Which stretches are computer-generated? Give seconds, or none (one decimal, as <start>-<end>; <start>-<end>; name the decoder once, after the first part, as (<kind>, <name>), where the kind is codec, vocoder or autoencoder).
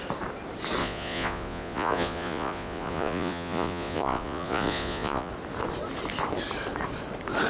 0.8-5.3 (vocoder, Vocos)